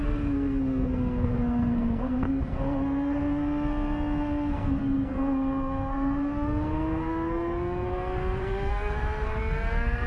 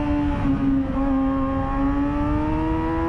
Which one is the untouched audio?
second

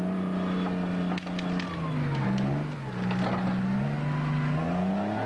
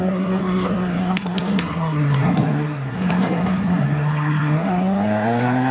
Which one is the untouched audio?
first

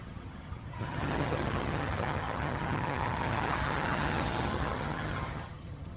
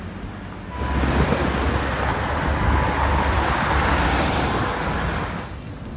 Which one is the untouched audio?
second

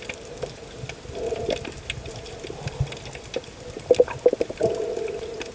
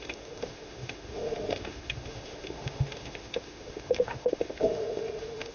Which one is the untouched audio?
first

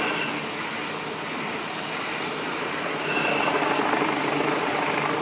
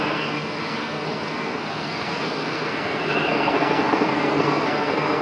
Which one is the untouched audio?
first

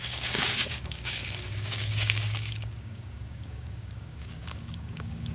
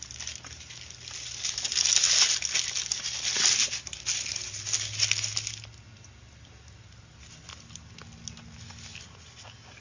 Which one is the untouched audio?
second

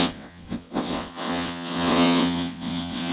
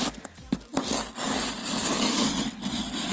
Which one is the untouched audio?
second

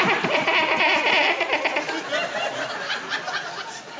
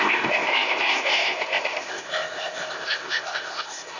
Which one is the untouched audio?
first